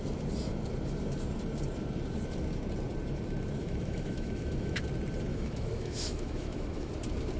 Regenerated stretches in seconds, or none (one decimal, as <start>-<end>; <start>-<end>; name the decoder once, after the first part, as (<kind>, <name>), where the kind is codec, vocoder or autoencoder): 3.6-4.8 (autoencoder, DAC-VAE); 5.3-6.9